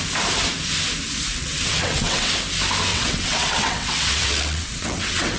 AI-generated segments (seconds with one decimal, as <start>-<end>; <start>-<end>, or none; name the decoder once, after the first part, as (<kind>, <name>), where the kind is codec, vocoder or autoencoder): 1.3-2.3 (vocoder, WaveNeXt); 2.9-5.4